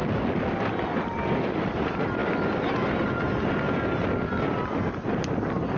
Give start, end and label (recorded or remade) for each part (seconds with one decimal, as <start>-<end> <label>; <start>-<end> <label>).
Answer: 0.0-0.7 recorded; 0.7-2.2 remade; 2.2-5.8 recorded